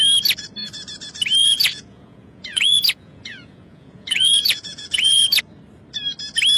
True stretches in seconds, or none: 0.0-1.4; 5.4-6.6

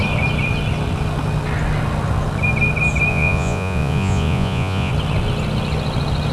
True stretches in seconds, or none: 0.0-3.1; 4.9-6.3

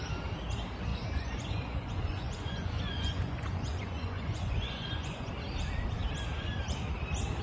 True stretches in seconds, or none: 0.0-0.9; 5.3-7.4

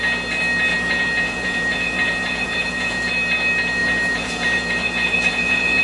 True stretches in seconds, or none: 0.0-0.7; 3.1-3.8

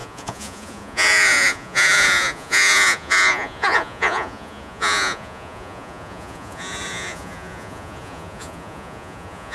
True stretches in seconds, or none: none

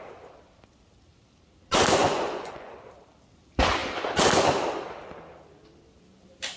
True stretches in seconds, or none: 0.0-2.0; 2.7-6.6